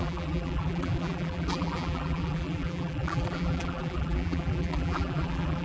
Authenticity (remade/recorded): remade